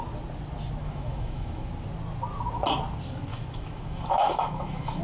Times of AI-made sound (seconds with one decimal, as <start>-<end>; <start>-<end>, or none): 0.8-1.7; 3.3-5.0